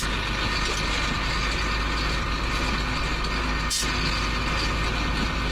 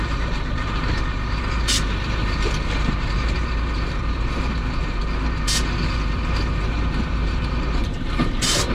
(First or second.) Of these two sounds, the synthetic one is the second